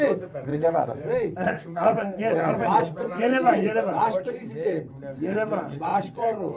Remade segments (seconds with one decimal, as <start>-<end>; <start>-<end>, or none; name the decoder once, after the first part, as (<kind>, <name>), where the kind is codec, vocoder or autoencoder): 0.0-6.6 (vocoder, WaveNeXt)